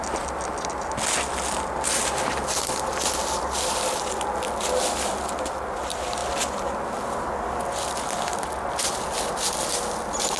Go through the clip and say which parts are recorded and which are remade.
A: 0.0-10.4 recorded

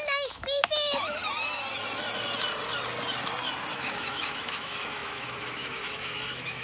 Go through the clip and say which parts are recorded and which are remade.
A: 0.0-1.2 remade; 1.2-3.7 recorded; 3.7-6.6 remade